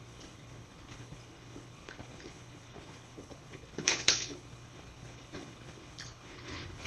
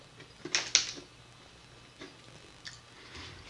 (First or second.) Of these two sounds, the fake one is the first